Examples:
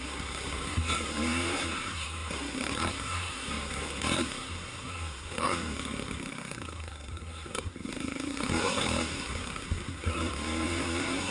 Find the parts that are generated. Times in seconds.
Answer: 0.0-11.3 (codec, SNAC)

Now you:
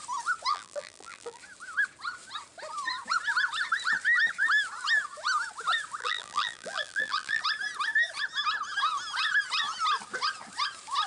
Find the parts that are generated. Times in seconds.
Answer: 0.5-1.4 (vocoder, BigVGAN v2); 6.0-7.4

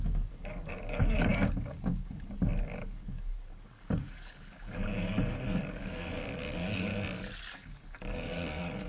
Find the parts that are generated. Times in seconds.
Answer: 0.0-6.9 (codec, DAC); 7.4-8.9

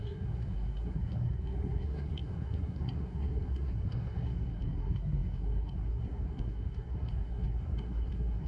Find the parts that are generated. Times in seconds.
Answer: 0.0-8.5 (codec, SNAC)

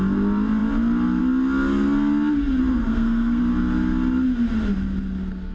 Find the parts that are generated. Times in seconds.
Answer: 2.7-3.4 (codec, SNAC)